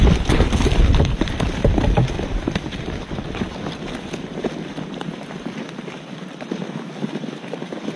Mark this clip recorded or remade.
remade